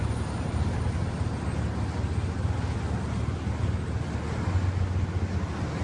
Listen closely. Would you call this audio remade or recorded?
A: recorded